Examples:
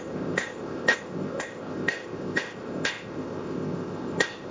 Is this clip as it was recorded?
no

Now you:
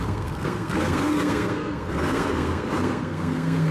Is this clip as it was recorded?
no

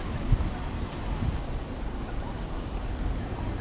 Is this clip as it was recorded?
no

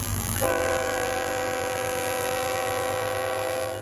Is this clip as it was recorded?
no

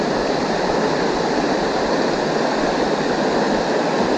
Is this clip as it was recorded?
yes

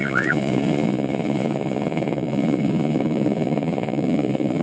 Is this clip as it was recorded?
no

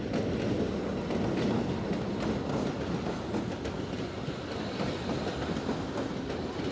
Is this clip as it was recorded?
yes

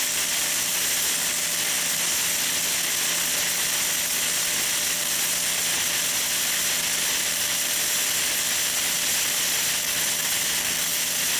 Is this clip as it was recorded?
yes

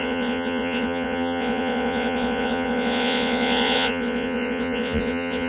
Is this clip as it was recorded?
no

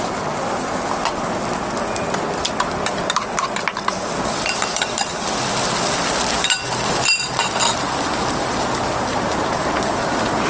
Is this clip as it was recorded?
yes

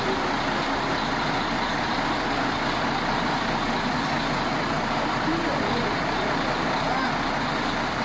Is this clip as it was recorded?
yes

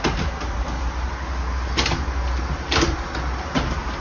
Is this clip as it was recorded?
yes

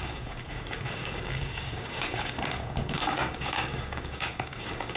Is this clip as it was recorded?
no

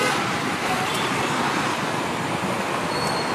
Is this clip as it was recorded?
yes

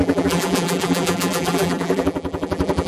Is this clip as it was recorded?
no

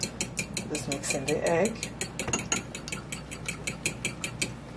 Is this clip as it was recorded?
yes